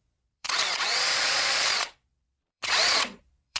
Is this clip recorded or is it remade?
remade